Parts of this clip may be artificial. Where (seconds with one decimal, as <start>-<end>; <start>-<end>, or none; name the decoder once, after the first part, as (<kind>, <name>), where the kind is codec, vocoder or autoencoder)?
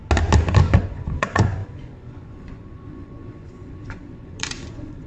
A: 0.6-5.1 (vocoder, Vocos)